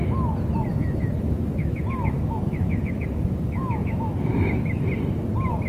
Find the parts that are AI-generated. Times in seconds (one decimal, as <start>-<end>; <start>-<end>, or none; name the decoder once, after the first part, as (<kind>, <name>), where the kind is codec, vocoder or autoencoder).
0.7-4.1 (autoencoder, DAC-VAE)